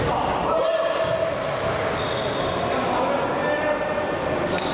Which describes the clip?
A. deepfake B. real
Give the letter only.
B